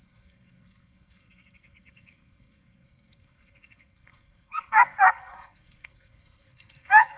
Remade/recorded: remade